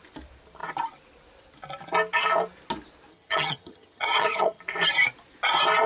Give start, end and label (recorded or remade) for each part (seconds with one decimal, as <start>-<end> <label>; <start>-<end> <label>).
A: 0.0-3.1 recorded; 3.1-4.6 remade; 4.6-5.9 recorded